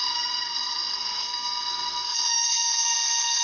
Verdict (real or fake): fake